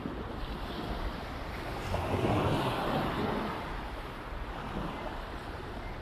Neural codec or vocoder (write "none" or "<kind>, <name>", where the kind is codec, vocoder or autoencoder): none